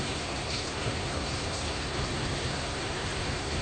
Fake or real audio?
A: fake